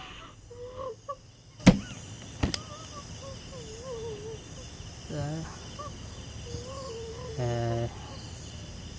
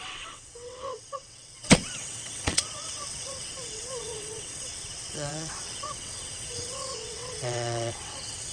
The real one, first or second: first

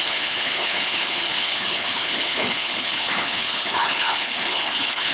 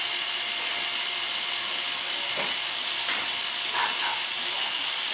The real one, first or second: second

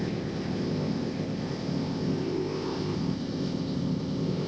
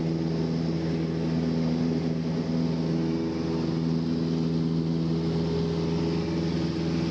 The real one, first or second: second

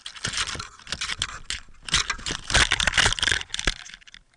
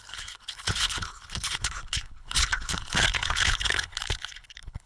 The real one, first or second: first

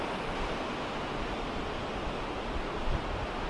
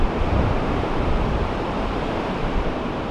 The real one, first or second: first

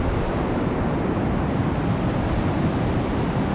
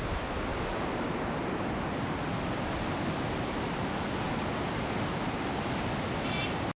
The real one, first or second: second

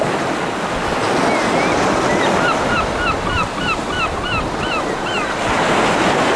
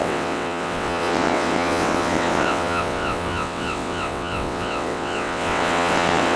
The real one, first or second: first